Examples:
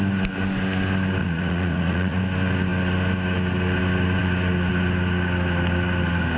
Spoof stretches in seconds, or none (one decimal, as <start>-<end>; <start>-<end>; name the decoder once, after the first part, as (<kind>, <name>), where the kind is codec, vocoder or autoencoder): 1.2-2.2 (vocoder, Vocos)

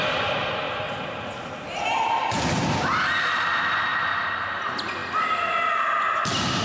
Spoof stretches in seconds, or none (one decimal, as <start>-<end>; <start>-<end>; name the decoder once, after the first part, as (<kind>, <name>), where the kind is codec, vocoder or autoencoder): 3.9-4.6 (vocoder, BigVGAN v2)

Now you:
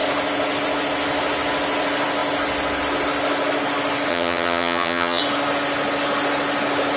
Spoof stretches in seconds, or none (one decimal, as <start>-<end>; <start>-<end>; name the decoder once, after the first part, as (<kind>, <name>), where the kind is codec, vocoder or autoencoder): 4.1-5.2 (vocoder, HiFi-GAN)

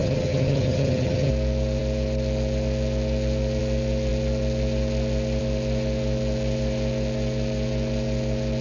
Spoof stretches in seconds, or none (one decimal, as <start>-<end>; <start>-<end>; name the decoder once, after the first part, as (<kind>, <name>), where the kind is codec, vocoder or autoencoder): 0.0-1.3 (vocoder, HiFi-GAN)